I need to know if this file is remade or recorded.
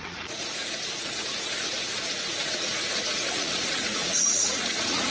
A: remade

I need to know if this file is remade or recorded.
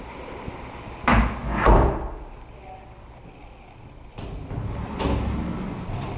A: recorded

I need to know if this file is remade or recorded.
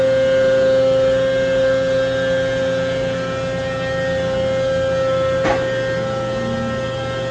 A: recorded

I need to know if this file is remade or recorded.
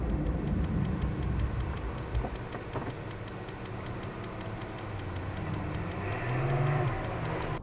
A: recorded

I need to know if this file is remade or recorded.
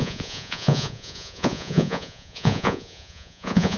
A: remade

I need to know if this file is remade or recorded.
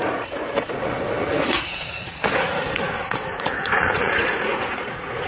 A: remade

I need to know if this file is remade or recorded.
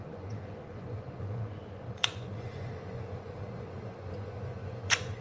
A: remade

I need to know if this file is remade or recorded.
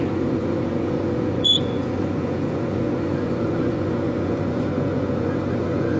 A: remade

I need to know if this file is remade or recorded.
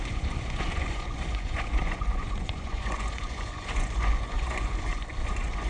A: remade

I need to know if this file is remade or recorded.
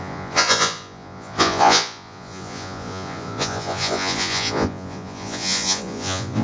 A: remade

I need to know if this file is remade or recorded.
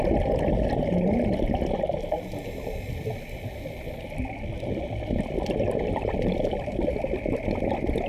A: recorded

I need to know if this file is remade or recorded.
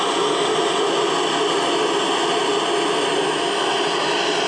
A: recorded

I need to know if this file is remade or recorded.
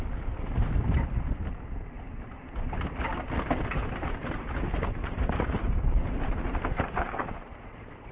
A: recorded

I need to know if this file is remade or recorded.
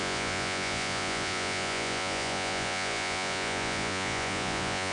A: remade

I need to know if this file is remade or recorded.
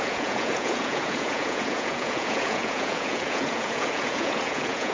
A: remade